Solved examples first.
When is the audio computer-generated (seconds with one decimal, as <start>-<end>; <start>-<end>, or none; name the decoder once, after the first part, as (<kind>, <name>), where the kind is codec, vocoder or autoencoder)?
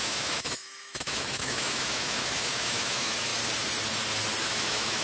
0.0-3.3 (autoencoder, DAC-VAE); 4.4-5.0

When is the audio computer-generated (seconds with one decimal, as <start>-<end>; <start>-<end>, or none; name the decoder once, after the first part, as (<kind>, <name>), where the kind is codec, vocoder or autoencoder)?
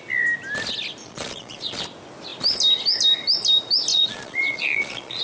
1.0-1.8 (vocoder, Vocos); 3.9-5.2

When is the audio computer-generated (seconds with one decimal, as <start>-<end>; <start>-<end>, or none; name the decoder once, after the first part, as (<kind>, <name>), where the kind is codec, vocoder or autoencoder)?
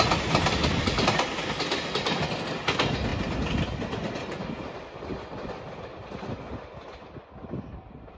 none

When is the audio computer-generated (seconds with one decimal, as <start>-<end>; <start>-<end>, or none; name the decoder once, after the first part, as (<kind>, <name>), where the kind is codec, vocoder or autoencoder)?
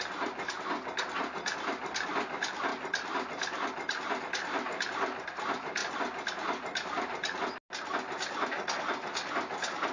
none